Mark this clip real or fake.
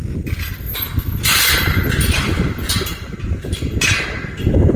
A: fake